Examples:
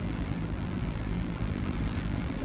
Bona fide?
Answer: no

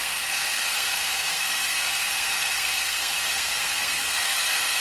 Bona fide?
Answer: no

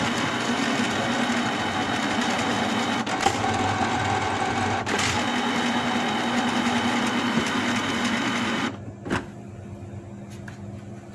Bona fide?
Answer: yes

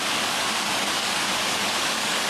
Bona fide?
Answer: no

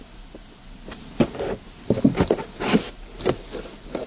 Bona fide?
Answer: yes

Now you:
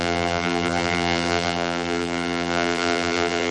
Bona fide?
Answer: no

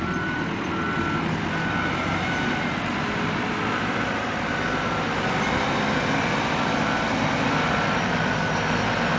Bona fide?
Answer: yes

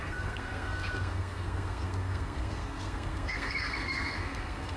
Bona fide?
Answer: no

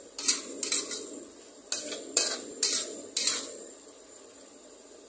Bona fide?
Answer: yes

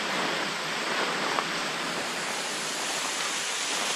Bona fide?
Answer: yes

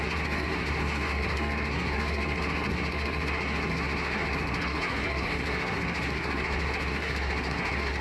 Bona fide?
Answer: no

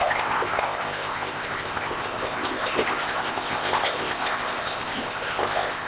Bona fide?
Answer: no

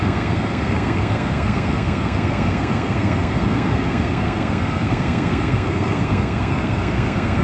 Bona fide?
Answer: no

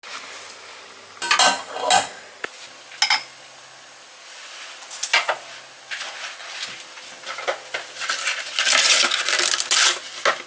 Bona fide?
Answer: yes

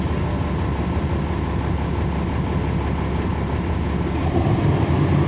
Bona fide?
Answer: yes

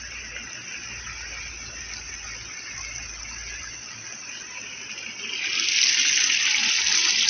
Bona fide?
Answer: yes